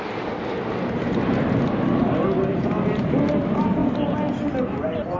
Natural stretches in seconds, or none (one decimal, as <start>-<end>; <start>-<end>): 0.0-5.2